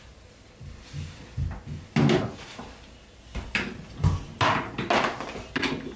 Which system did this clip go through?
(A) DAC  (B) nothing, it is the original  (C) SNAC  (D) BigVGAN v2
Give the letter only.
B